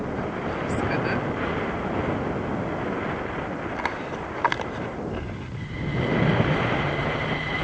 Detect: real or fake real